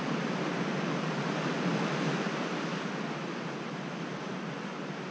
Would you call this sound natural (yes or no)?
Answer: no